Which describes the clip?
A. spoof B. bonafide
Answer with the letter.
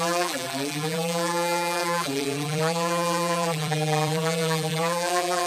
A